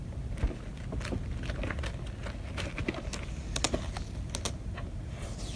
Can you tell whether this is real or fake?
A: real